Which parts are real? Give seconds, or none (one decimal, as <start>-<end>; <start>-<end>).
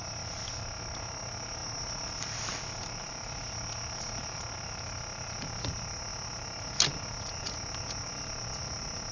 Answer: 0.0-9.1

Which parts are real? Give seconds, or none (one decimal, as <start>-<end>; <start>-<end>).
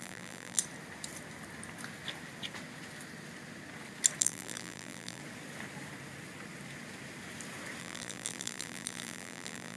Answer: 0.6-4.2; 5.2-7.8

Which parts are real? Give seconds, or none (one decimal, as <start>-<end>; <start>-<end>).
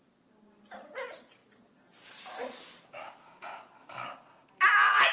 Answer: 0.0-5.1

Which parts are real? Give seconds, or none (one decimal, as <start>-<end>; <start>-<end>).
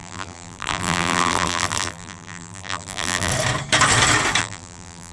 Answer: 3.3-4.4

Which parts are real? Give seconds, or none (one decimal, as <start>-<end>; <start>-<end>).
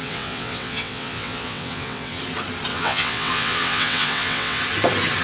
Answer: 2.2-2.7; 4.6-5.2